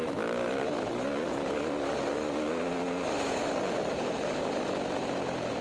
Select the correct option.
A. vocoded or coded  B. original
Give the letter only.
B